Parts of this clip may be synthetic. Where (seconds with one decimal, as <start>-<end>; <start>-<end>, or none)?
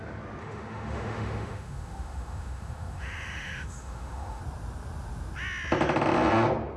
0.4-4.4